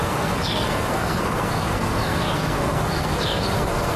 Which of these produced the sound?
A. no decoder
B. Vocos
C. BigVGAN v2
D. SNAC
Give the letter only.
D